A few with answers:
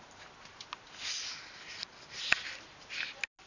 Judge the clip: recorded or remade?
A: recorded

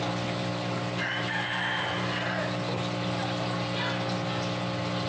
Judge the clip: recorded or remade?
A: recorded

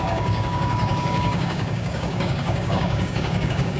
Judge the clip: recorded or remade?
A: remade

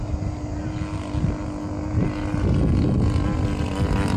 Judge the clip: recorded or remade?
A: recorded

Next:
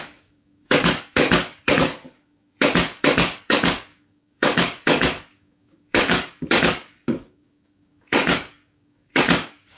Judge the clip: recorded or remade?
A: remade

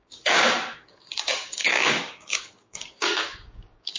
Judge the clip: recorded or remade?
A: remade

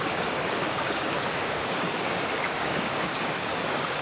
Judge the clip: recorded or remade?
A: remade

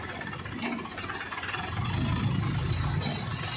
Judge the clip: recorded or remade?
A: recorded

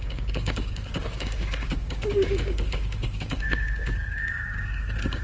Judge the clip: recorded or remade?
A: remade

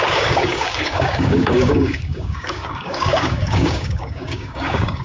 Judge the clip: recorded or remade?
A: remade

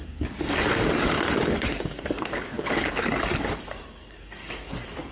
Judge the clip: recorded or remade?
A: remade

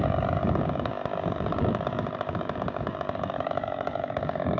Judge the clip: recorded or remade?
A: remade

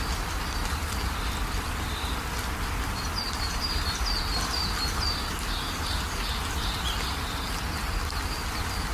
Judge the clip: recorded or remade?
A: recorded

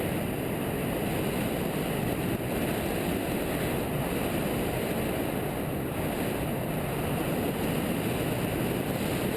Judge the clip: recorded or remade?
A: recorded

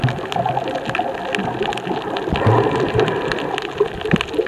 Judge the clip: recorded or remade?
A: recorded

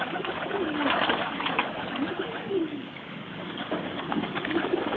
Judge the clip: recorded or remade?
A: remade